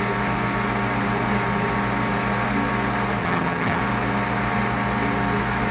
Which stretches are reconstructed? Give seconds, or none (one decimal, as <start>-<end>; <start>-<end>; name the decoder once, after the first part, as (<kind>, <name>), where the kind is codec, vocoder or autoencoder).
3.2-3.8 (vocoder, HiFi-GAN)

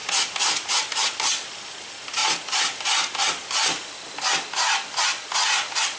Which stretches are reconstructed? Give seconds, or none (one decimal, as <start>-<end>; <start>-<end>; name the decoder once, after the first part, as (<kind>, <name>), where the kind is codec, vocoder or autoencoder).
none

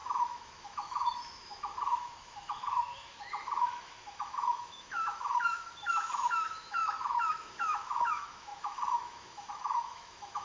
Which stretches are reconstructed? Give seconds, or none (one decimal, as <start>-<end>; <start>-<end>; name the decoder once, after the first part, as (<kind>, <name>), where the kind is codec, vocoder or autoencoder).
0.0-10.4 (autoencoder, DAC-VAE)

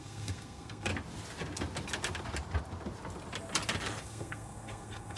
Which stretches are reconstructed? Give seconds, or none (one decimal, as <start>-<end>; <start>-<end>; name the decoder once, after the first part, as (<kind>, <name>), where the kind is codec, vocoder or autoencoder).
0.0-0.9 (codec, SNAC); 4.0-5.2

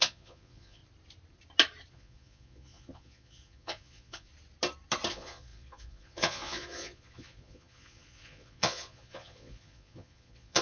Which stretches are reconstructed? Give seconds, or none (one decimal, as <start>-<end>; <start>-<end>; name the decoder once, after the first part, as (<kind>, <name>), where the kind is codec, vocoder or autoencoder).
0.0-0.8 (vocoder, Vocos); 1.9-4.3; 5.1-10.6

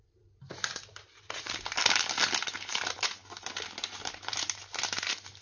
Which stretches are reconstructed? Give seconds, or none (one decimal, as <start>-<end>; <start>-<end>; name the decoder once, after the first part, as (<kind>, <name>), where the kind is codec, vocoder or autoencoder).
0.0-1.8 (vocoder, BigVGAN v2); 2.7-3.2

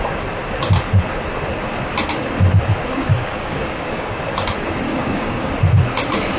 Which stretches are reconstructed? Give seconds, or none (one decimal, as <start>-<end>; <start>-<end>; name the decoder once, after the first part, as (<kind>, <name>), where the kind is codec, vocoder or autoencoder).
3.1-4.2 (codec, DAC); 4.9-5.5